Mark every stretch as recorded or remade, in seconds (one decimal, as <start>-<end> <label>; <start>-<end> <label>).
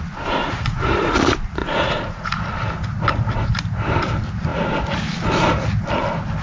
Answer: 0.0-0.4 recorded; 0.4-1.2 remade; 1.2-1.6 recorded; 1.6-2.3 remade; 2.3-6.4 recorded